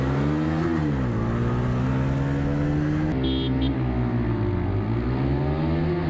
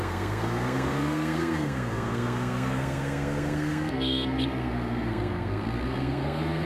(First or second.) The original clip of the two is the first